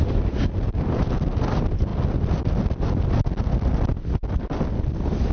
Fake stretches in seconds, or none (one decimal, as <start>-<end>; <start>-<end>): none